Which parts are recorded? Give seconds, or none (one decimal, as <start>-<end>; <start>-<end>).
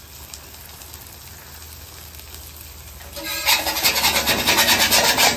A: 0.0-5.4